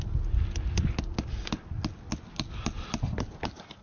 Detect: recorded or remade recorded